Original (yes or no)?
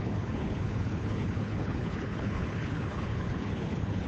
no